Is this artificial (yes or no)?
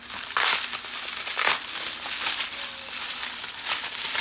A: no